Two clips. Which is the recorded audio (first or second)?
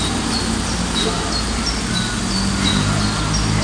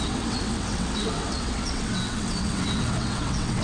first